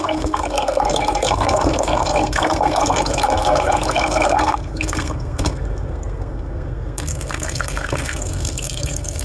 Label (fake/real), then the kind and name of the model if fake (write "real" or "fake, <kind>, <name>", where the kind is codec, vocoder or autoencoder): fake, codec, SNAC